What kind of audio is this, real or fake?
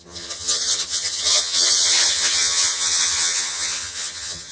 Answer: fake